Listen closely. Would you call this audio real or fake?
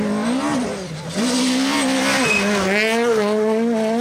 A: real